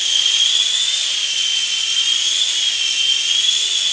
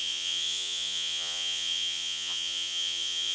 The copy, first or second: second